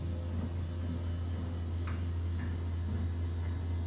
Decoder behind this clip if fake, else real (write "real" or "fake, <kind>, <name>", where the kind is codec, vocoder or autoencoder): real